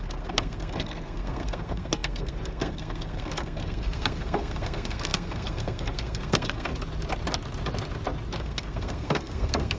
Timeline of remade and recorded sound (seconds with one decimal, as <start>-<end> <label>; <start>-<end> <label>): 0.0-6.7 remade; 6.7-8.4 recorded; 8.4-9.8 remade